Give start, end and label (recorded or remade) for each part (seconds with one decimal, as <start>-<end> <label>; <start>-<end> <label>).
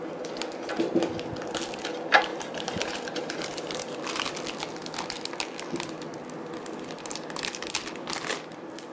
0.0-2.3 recorded; 2.3-4.2 remade; 4.2-8.9 recorded